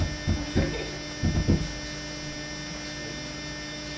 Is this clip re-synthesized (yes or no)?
no